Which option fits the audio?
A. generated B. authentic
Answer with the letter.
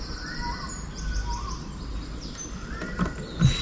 B